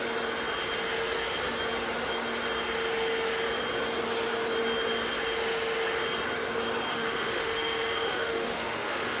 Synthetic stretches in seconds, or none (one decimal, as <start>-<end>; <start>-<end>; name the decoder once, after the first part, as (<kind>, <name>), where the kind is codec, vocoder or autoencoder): 6.9-9.2 (autoencoder, DAC-VAE)